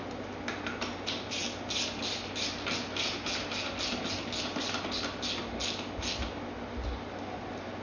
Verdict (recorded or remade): recorded